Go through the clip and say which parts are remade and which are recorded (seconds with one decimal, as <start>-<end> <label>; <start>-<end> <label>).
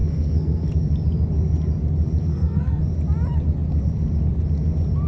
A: 0.0-0.7 remade; 0.7-2.2 recorded; 2.2-2.8 remade; 2.8-5.1 recorded